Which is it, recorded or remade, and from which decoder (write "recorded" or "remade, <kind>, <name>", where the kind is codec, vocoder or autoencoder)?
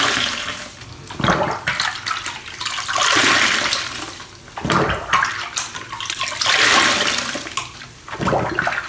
recorded